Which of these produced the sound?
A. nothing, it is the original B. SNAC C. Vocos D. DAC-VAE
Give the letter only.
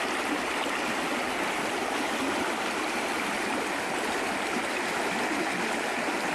A